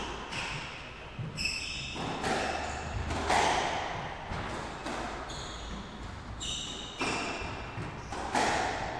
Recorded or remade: recorded